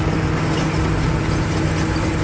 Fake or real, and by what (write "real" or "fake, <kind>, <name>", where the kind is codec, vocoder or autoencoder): real